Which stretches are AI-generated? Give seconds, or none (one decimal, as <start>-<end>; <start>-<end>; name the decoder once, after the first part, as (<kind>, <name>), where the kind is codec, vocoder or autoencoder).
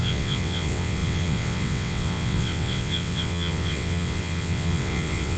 0.0-5.4 (vocoder, WaveNeXt)